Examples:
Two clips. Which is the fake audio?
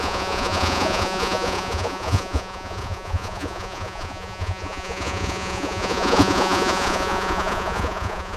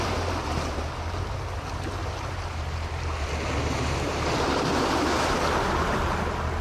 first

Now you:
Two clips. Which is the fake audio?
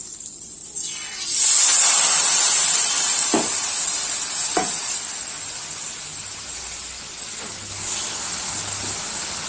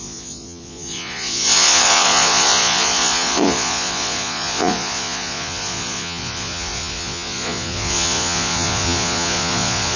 second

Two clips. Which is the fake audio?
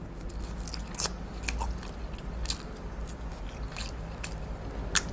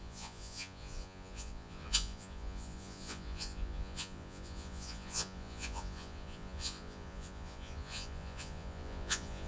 second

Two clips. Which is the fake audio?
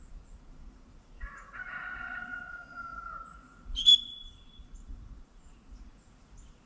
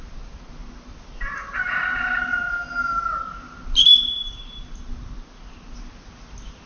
first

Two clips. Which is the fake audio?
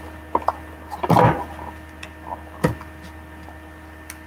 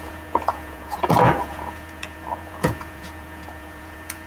second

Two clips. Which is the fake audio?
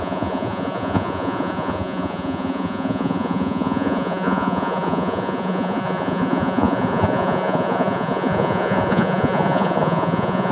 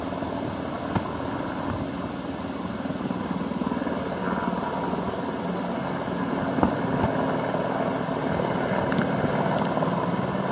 first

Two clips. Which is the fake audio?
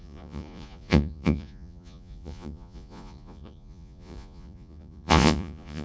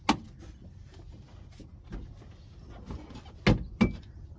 first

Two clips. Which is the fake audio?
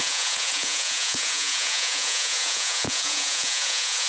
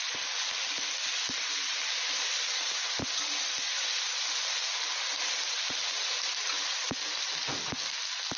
first